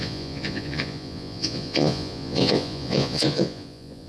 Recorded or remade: remade